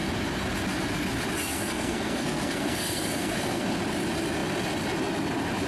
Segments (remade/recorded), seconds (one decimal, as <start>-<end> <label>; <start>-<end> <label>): 0.0-1.4 recorded; 1.4-3.7 remade; 3.7-5.7 recorded